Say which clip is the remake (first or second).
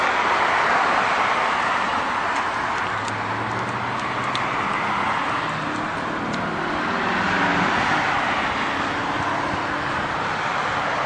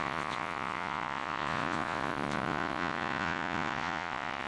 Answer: second